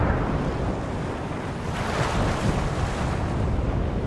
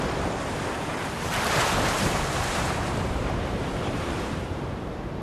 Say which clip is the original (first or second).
first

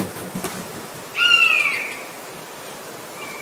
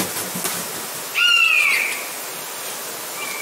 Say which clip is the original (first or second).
second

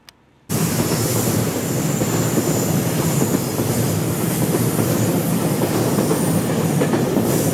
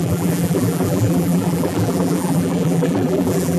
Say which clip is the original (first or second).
first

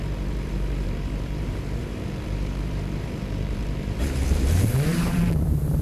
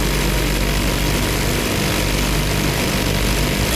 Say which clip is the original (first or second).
second